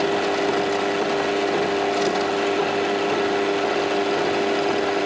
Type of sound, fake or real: real